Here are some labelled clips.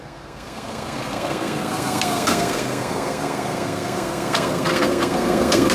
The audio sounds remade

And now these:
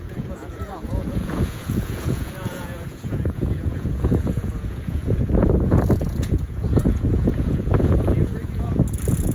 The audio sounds remade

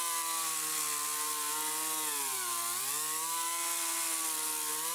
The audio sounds recorded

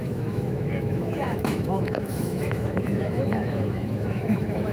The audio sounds remade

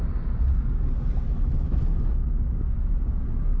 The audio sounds recorded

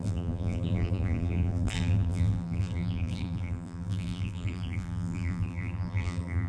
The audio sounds remade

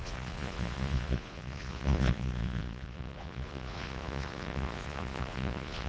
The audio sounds remade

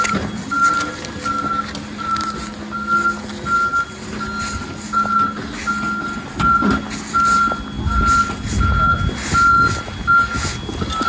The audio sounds recorded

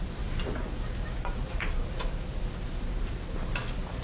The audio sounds recorded